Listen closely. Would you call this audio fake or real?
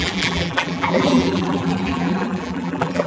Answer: fake